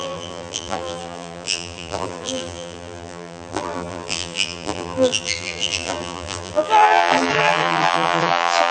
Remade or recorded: remade